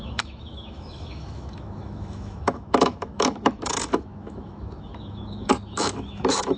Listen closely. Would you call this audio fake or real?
fake